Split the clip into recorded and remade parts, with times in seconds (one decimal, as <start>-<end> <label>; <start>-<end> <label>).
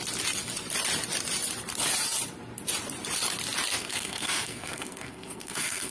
0.0-3.7 recorded; 3.7-5.9 remade